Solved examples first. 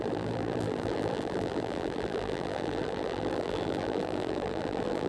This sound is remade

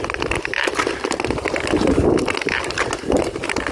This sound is remade